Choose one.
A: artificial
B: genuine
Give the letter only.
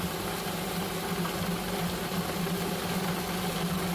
B